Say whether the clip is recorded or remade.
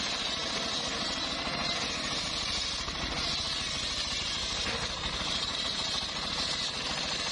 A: recorded